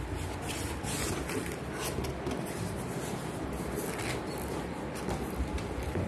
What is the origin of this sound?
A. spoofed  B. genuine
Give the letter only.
B